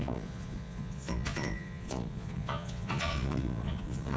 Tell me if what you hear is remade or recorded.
remade